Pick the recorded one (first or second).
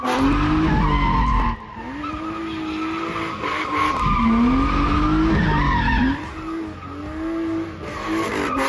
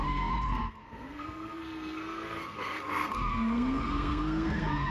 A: first